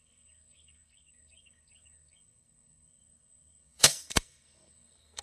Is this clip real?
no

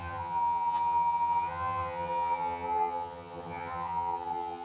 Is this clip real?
no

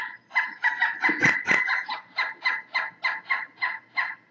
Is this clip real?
yes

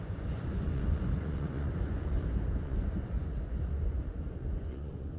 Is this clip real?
no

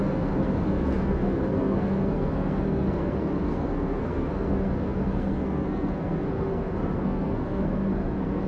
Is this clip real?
no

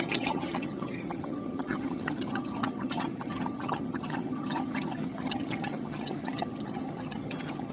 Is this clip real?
no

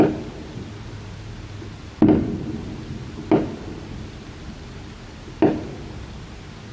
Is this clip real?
yes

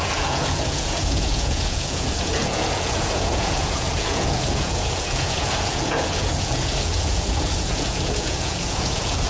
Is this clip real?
no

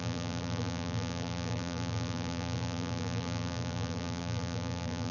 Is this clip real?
no